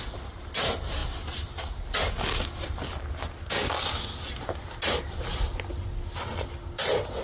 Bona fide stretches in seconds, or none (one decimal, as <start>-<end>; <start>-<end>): 0.0-7.2